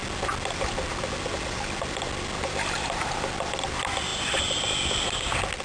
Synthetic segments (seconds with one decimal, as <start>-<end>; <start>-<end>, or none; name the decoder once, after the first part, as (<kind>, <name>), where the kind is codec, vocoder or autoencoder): none